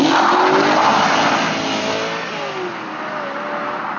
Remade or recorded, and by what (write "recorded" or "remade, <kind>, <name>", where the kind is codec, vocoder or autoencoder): recorded